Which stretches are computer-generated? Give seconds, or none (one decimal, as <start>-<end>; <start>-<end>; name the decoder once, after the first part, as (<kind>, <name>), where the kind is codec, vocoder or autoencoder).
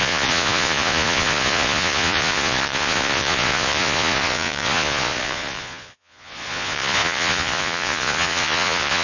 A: 0.0-9.0 (vocoder, Vocos)